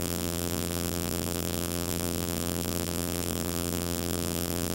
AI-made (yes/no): yes